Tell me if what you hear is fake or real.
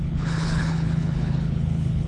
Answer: fake